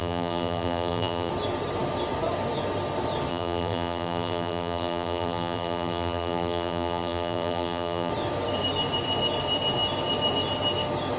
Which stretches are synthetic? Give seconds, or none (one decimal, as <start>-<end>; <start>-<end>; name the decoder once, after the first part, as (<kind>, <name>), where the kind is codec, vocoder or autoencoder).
0.0-1.3 (vocoder, BigVGAN v2); 3.3-8.1